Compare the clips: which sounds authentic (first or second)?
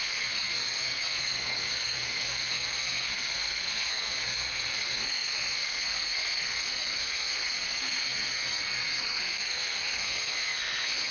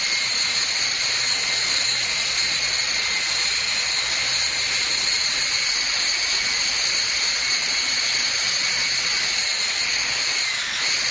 second